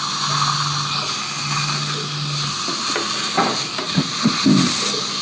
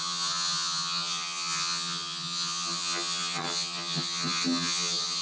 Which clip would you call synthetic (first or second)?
second